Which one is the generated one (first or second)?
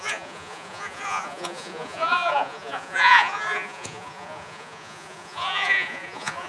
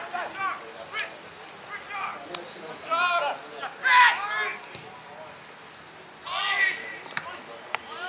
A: first